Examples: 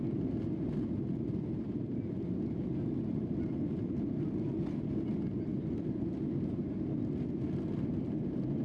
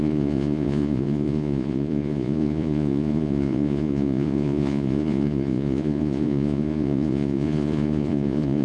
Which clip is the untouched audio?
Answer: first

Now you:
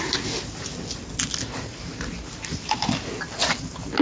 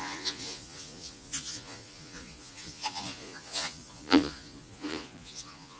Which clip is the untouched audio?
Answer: first